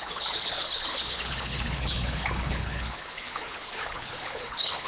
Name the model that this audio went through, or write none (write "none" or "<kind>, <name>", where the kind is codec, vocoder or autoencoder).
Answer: codec, HILCodec